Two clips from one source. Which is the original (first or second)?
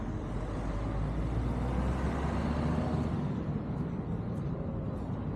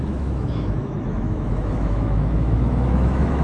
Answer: first